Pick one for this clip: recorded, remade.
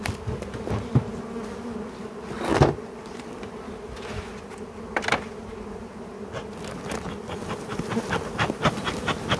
recorded